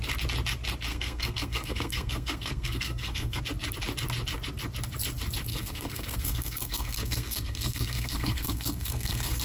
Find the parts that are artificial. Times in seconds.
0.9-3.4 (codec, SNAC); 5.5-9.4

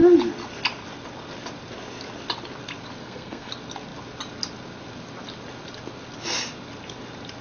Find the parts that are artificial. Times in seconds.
3.0-3.5 (codec, SNAC)

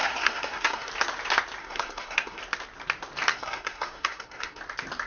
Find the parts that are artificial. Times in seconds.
0.0-0.9 (codec, SNAC); 1.6-2.4; 3.3-4.6